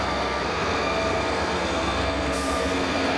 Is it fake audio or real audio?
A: fake